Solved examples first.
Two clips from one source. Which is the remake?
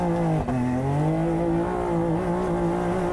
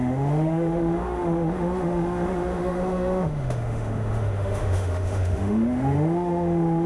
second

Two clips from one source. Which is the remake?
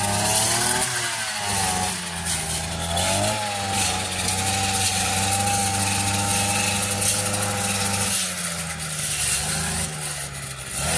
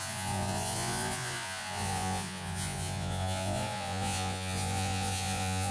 second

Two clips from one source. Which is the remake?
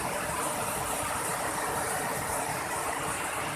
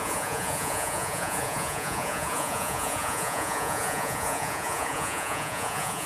second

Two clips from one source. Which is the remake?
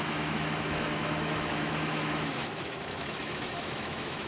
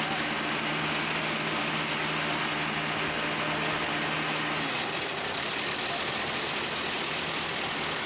first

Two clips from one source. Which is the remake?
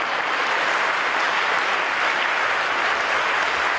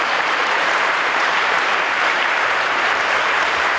second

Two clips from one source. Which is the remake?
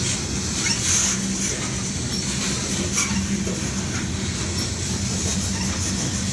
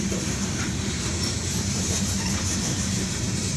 second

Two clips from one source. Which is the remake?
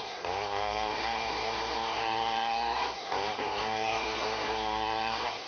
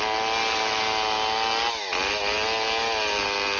first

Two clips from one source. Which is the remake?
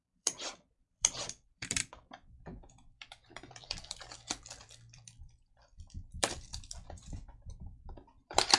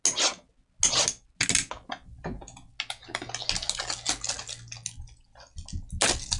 first